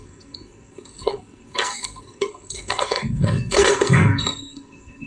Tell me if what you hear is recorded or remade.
remade